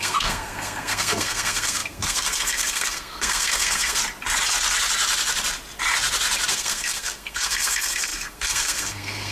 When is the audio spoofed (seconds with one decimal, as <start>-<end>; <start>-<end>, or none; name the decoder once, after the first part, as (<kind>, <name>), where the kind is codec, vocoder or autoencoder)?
0.0-4.0 (codec, SNAC); 6.5-9.3